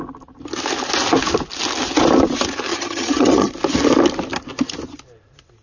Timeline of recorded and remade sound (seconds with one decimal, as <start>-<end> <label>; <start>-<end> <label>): 0.0-2.7 recorded; 2.7-3.5 remade; 3.5-5.6 recorded